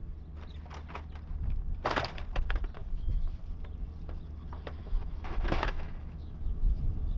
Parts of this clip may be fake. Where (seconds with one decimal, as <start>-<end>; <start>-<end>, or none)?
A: 2.8-3.4; 4.8-6.8